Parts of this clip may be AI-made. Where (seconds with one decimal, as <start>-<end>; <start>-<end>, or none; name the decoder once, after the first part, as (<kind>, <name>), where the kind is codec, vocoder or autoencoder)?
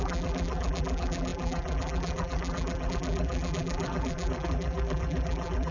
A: 0.0-5.7 (vocoder, BigVGAN v2)